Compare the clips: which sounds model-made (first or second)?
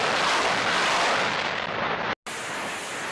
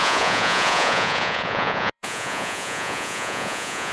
second